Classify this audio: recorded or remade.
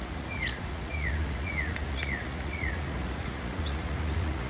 remade